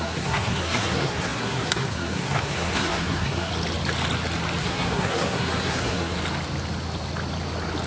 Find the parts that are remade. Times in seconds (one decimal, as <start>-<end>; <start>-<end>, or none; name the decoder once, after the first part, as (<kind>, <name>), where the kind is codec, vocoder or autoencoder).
0.0-3.5 (codec, SNAC); 4.6-6.2